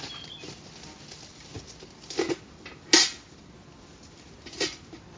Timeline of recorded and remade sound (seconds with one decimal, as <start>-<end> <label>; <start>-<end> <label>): 0.0-5.2 recorded

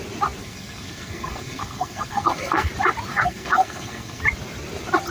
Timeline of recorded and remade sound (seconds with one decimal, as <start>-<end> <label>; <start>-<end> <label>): 0.0-0.4 recorded; 0.4-2.7 remade; 2.7-3.1 recorded; 3.1-4.2 remade; 4.2-5.1 recorded

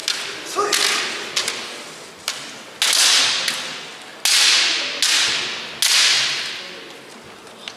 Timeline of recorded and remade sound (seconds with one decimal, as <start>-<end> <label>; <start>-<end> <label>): 0.0-7.8 recorded

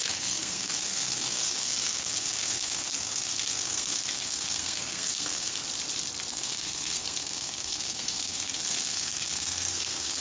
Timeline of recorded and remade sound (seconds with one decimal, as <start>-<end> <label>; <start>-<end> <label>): 0.0-5.6 remade; 5.6-6.3 recorded; 6.3-10.2 remade

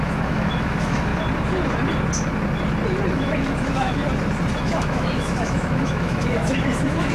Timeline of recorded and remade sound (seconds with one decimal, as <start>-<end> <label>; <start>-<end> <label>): 0.0-1.1 remade; 1.1-3.1 recorded; 3.1-4.0 remade; 4.0-4.6 recorded; 4.6-7.1 remade

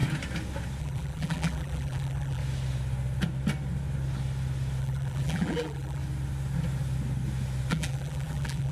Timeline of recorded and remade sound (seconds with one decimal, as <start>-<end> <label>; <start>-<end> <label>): 0.0-0.8 recorded; 0.8-2.4 remade; 2.4-4.8 recorded; 4.8-6.0 remade; 6.0-7.7 recorded; 7.7-8.7 remade